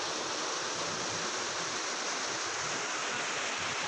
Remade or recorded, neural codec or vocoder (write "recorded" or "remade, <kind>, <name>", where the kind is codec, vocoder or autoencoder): recorded